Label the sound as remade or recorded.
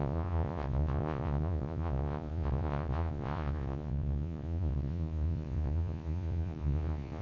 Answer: remade